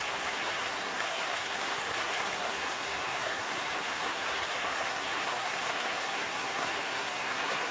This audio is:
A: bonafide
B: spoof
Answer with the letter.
B